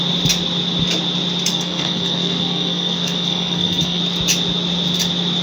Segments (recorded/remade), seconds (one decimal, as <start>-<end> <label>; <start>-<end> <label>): 0.0-1.5 recorded; 1.5-4.0 remade; 4.0-5.4 recorded